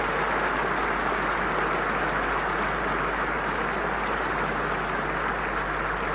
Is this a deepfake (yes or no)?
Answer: no